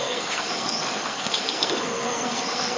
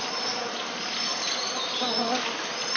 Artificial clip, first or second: first